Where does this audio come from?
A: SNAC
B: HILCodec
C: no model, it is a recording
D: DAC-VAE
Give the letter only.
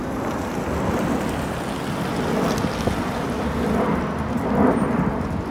C